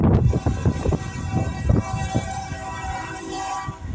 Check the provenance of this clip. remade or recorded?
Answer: remade